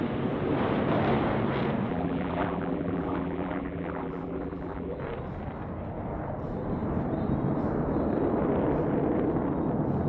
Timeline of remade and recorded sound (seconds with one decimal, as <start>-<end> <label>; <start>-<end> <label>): 0.0-1.9 recorded; 1.9-5.0 remade; 5.0-10.1 recorded